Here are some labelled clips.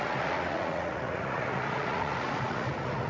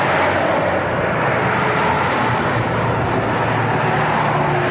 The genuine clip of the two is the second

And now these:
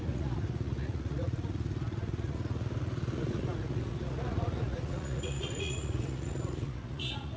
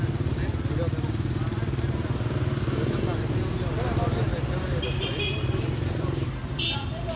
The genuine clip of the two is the second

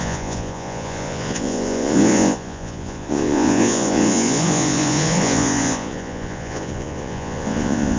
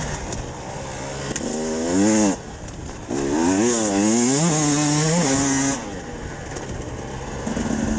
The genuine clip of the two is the second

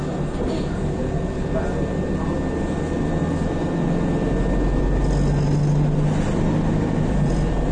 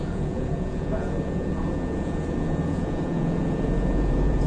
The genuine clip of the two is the first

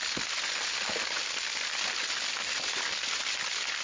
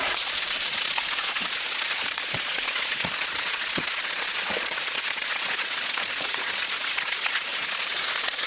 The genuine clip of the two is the first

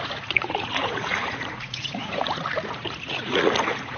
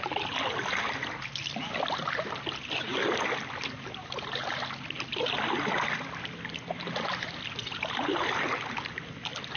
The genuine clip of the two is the second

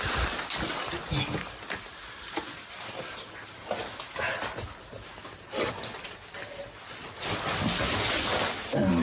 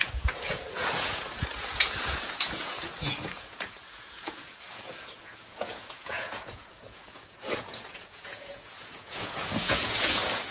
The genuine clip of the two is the first